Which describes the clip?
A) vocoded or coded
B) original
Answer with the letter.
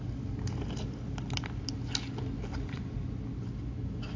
B